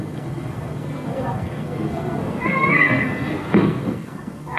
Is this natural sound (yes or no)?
no